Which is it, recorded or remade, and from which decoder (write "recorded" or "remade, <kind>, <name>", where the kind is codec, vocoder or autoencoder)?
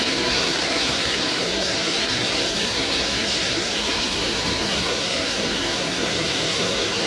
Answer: remade, codec, SNAC